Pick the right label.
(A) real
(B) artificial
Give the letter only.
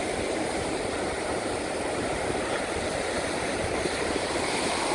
B